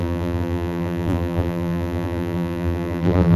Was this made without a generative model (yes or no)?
no